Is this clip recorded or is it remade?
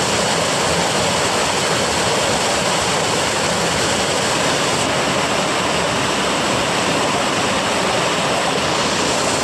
recorded